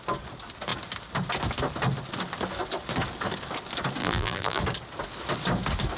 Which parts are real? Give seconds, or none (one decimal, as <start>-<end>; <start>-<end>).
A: 0.0-4.0; 4.6-6.0